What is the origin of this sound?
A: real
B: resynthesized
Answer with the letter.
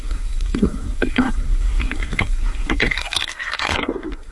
B